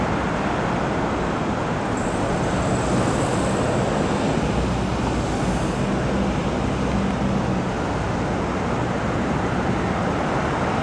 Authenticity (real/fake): real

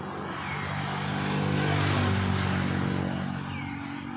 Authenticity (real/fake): real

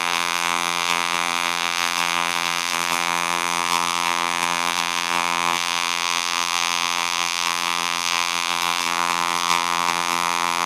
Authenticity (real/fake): fake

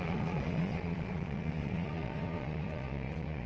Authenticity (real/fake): fake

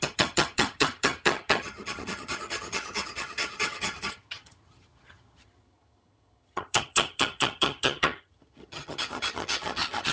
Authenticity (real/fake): fake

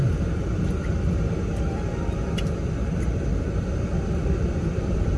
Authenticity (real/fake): real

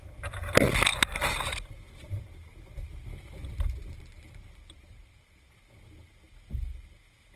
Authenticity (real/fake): real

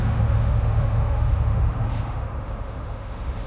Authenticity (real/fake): fake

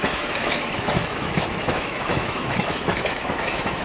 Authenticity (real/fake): fake